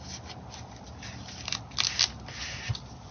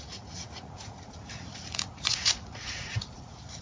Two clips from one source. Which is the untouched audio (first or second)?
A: first